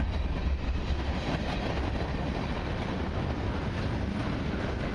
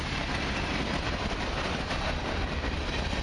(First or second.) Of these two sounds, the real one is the first